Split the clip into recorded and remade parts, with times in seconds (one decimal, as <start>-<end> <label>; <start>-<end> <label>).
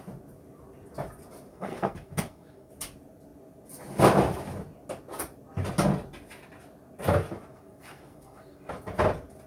0.0-1.5 recorded; 1.5-2.7 remade; 2.7-7.5 recorded; 7.5-8.7 remade; 8.7-9.5 recorded